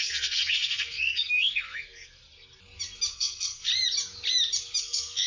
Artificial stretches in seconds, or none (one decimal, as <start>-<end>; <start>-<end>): 0.0-2.2; 3.1-3.7; 4.8-5.3